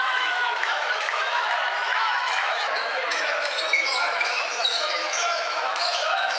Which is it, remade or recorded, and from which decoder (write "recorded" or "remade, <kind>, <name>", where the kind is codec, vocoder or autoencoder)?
remade, autoencoder, DAC-VAE